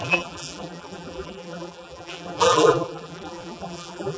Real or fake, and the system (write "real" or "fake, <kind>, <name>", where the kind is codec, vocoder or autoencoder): fake, vocoder, BigVGAN v2